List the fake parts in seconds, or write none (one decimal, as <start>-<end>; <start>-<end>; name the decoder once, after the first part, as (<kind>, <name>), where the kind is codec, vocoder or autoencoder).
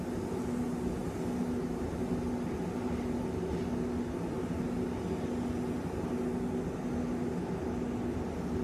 none